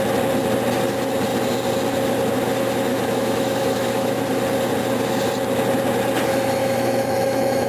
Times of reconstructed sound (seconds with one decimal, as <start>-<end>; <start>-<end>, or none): 2.9-4.2; 6.6-7.7